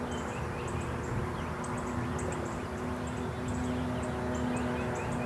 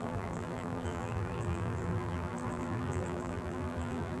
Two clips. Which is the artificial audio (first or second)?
second